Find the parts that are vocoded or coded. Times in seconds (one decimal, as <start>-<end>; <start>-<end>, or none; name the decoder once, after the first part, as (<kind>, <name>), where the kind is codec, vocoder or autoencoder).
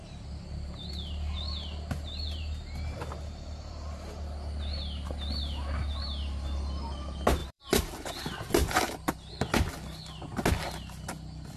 7.4-8.2 (vocoder, BigVGAN v2); 8.6-9.3